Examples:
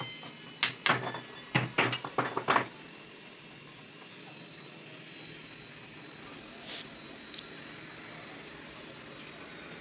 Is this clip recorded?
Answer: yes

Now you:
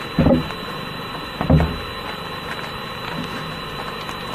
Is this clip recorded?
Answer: no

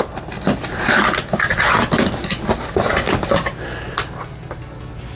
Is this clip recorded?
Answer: yes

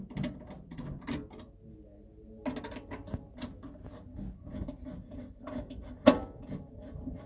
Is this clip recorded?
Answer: yes